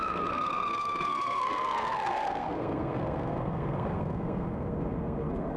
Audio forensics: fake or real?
fake